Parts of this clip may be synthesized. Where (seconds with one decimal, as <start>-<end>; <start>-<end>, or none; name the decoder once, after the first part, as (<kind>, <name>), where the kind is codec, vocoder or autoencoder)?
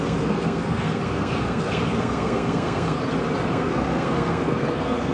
0.0-3.0 (codec, SNAC); 3.5-5.1